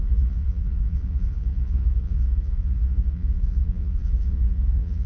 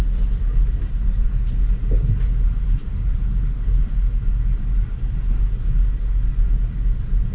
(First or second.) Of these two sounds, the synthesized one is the first